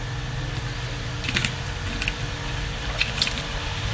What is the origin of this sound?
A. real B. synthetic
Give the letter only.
A